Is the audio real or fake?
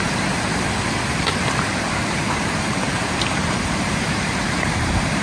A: fake